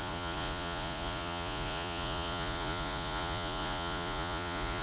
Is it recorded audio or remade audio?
remade